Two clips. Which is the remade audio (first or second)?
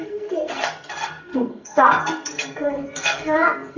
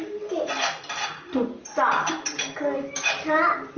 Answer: first